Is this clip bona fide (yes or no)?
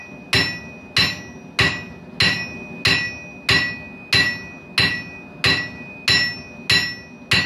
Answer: yes